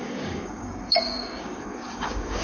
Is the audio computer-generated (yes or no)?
yes